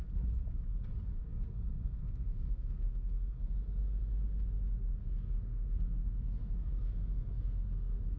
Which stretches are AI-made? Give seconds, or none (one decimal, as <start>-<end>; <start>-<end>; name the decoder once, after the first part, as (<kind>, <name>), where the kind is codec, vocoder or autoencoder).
1.2-3.5 (codec, SNAC); 5.0-8.2